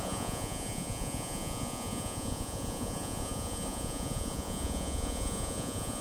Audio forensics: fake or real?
fake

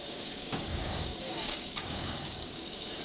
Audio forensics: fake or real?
fake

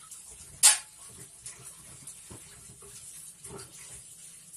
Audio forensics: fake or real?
real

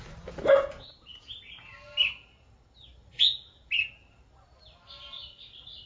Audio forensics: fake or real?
real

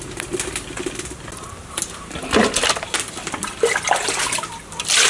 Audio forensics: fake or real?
real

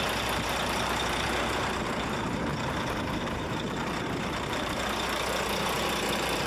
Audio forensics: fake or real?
fake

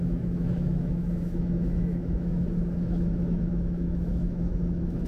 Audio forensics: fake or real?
fake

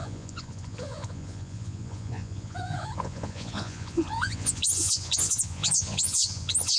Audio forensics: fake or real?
fake